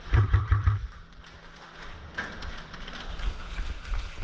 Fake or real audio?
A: fake